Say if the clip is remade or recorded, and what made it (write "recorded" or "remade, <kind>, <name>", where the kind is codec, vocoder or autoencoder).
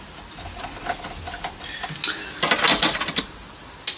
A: recorded